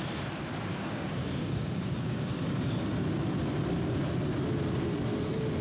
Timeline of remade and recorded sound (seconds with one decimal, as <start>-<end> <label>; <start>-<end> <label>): 0.0-0.7 recorded; 0.7-2.4 remade; 2.4-5.6 recorded